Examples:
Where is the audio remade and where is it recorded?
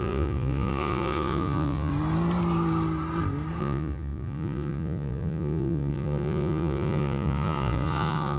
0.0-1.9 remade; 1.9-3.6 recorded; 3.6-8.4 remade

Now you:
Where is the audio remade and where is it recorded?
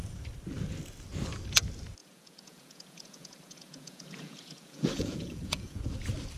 0.0-2.0 recorded; 2.0-5.8 remade; 5.8-6.4 recorded